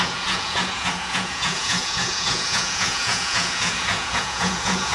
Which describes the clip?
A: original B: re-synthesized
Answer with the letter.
B